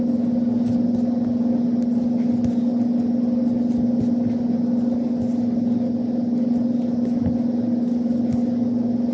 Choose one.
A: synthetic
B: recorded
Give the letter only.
B